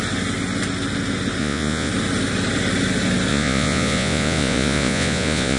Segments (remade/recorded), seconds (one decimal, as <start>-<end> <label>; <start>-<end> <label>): 0.0-1.4 recorded; 1.4-1.9 remade; 1.9-3.3 recorded; 3.3-5.6 remade

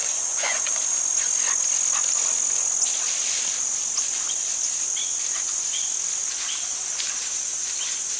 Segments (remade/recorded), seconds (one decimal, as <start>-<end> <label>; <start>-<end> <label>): 0.0-1.0 remade; 1.0-8.2 recorded

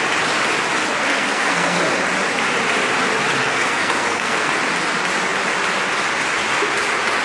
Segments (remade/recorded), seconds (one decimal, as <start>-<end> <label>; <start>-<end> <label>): 0.0-1.0 recorded; 1.0-1.8 remade; 1.8-3.4 recorded; 3.4-4.5 remade; 4.5-7.2 recorded

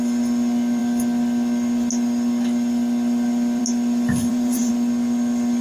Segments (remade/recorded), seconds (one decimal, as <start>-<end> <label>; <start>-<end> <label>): 0.0-4.2 recorded; 4.2-4.7 remade; 4.7-5.6 recorded

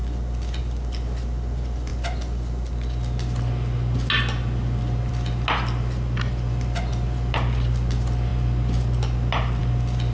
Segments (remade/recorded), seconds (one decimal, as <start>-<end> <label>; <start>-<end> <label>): 0.0-10.1 recorded

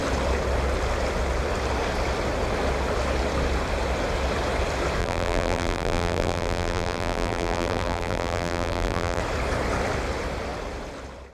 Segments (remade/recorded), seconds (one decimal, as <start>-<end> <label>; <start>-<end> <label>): 0.0-5.0 recorded; 5.0-9.2 remade; 9.2-11.3 recorded

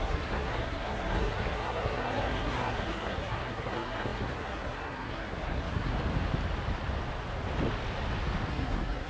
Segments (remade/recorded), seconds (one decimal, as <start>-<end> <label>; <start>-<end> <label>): 0.0-5.9 remade; 5.9-8.5 recorded; 8.5-9.1 remade

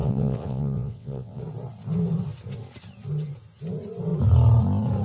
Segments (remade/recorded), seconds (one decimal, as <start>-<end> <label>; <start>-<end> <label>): 0.0-1.4 remade; 1.4-5.0 recorded